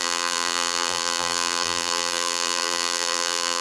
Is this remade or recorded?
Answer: remade